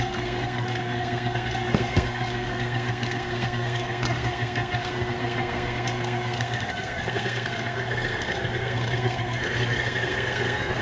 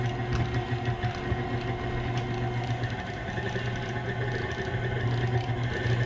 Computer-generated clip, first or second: first